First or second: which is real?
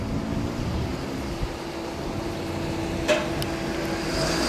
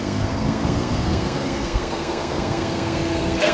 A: first